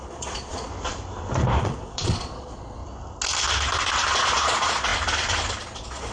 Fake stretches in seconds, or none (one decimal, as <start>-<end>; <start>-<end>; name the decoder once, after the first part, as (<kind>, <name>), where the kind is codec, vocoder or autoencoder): 0.0-0.7 (vocoder, Vocos); 1.6-2.8; 4.1-4.9; 5.6-6.1